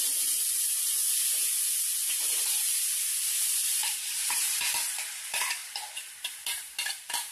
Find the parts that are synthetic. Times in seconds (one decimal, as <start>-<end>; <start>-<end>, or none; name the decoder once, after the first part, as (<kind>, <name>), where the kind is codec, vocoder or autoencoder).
0.0-1.0 (vocoder, BigVGAN v2); 1.6-7.3